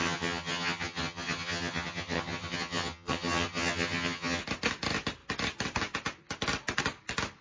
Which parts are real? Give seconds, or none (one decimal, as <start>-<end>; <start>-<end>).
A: 4.4-7.4